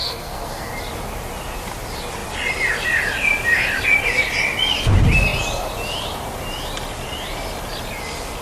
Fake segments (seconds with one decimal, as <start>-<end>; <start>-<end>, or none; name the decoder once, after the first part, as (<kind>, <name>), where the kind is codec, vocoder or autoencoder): 0.0-0.7 (codec, SNAC)